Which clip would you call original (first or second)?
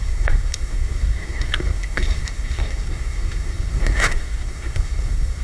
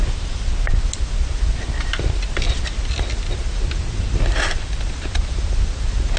second